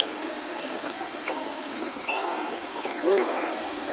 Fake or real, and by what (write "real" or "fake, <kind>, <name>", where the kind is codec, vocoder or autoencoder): fake, codec, SNAC